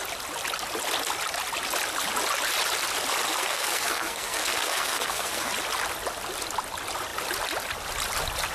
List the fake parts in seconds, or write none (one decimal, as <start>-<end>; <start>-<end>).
3.3-5.5